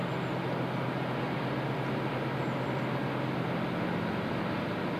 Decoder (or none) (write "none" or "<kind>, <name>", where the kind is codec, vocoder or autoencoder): none